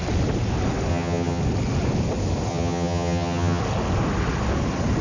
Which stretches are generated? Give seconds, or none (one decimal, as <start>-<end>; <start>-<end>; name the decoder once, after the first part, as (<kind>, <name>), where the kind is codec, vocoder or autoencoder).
0.9-1.4 (vocoder, HiFi-GAN); 2.5-3.6